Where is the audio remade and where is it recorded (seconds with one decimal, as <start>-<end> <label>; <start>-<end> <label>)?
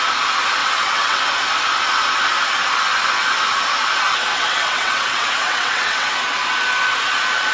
0.0-0.6 recorded; 0.6-1.2 remade; 1.2-4.3 recorded; 4.3-6.1 remade; 6.1-7.5 recorded